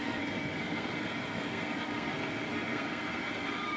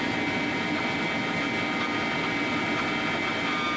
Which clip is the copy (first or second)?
first